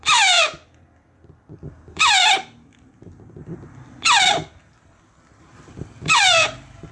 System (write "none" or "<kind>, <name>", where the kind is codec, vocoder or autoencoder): vocoder, BigVGAN v2